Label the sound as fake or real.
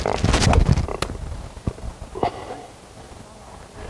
real